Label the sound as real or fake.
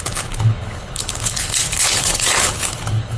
fake